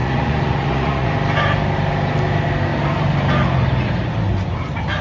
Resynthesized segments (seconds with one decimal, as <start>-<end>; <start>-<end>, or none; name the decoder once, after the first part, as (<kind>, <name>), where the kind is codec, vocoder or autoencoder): 0.0-1.1 (vocoder, Vocos)